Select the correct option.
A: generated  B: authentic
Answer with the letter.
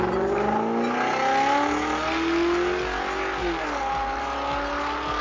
B